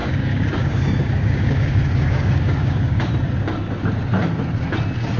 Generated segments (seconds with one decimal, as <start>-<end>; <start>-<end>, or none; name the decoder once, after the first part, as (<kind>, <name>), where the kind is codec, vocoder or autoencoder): 0.0-3.1 (codec, DAC)